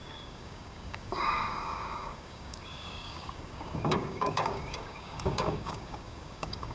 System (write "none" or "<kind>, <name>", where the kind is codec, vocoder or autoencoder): codec, DAC